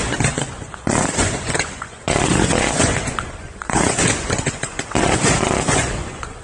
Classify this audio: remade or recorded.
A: remade